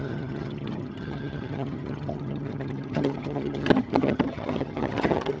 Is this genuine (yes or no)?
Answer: no